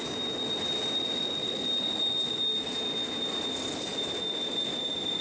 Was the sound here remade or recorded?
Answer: recorded